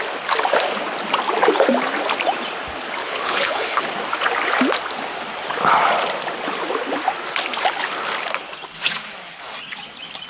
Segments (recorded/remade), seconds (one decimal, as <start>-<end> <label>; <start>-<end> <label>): 0.0-3.0 recorded; 3.0-3.8 remade; 3.8-10.3 recorded